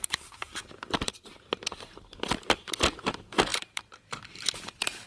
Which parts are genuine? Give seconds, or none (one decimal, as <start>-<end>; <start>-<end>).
none